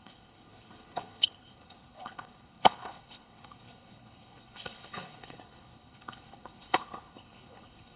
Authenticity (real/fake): fake